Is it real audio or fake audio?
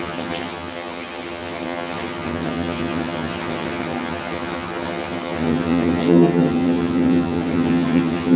fake